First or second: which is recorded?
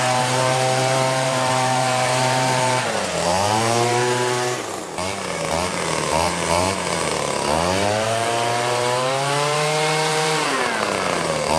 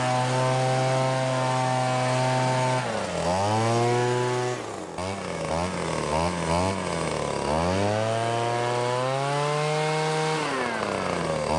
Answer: second